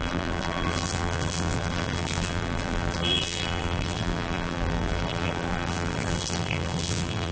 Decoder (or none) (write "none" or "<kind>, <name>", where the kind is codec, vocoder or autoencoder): vocoder, BigVGAN v2